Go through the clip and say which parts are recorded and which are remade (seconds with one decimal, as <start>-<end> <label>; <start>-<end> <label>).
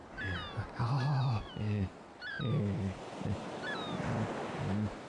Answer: 0.0-5.1 recorded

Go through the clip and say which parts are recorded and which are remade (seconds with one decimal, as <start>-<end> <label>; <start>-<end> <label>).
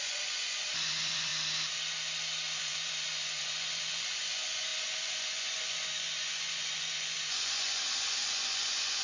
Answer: 0.0-1.3 remade; 1.3-2.6 recorded; 2.6-9.0 remade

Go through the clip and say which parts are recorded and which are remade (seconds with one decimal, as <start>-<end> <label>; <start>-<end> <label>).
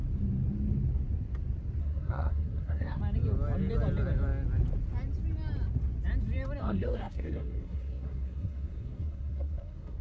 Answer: 0.0-1.8 recorded; 1.8-3.0 remade; 3.0-6.6 recorded; 6.6-10.0 remade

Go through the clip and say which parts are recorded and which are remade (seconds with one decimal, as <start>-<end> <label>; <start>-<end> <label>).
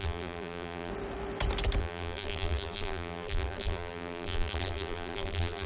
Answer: 0.0-0.9 remade; 0.9-1.8 recorded; 1.8-5.7 remade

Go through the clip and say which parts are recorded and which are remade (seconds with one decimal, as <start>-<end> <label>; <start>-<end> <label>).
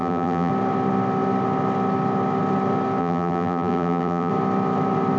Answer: 0.0-0.5 remade; 0.5-3.0 recorded; 3.0-4.3 remade; 4.3-5.2 recorded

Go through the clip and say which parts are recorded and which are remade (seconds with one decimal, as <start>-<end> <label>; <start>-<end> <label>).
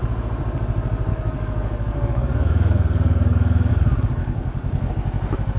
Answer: 0.0-1.1 recorded; 1.1-3.7 remade; 3.7-4.2 recorded; 4.2-4.9 remade; 4.9-5.6 recorded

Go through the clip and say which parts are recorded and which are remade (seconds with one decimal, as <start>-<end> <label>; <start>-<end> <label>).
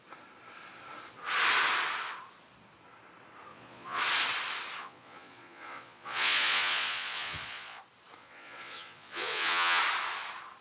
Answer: 0.0-3.5 recorded; 3.5-4.0 remade; 4.0-4.8 recorded; 4.8-7.8 remade; 7.8-8.2 recorded; 8.2-9.8 remade; 9.8-10.6 recorded